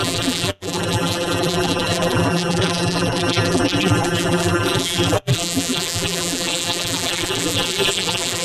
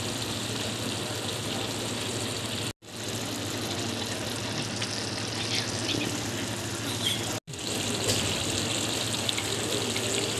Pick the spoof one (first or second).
first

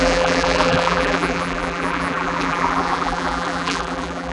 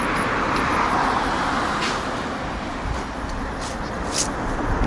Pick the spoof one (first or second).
first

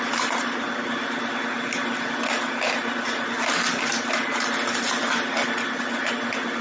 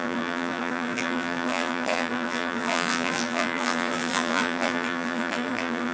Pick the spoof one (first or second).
second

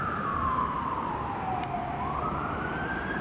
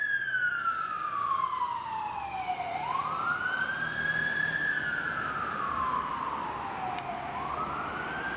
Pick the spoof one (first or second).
first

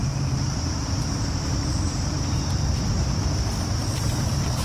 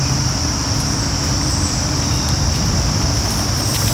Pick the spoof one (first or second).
first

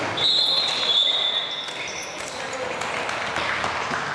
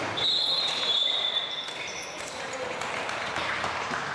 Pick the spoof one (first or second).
second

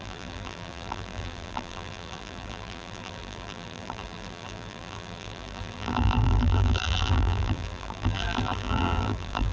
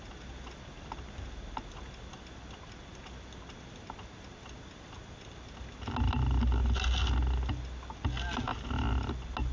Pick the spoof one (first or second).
first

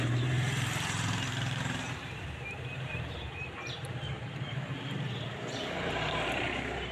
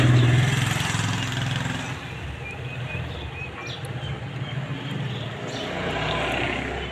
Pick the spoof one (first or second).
first